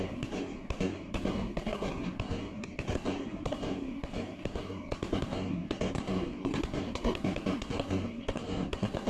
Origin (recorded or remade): remade